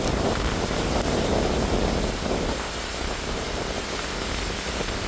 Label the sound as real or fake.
real